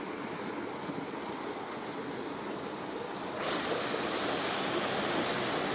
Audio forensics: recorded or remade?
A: recorded